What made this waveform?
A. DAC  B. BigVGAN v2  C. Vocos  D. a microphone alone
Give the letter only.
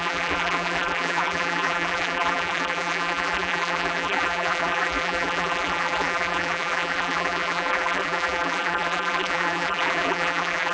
B